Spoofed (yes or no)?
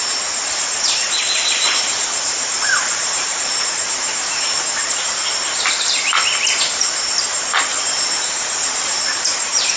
yes